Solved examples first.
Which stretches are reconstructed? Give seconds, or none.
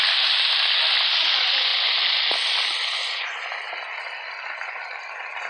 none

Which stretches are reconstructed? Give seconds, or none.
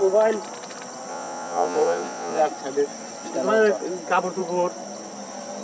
1.1-2.4 (vocoder, Vocos)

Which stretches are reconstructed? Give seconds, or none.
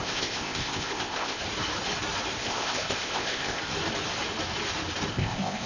0.0-1.4 (codec, ZipCodec); 2.4-3.6; 5.1-5.7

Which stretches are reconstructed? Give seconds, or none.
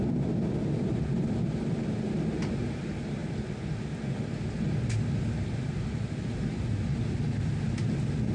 none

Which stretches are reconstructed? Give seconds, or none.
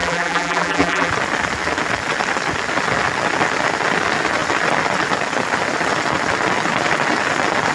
0.0-1.1 (vocoder, BigVGAN v2)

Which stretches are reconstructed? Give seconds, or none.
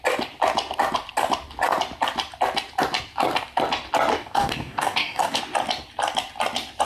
4.1-5.4 (codec, DAC)